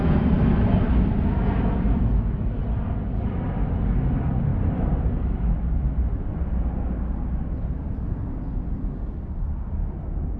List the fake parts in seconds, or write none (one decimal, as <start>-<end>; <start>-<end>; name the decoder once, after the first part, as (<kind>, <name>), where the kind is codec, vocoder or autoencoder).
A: 4.5-5.1 (vocoder, BigVGAN v2)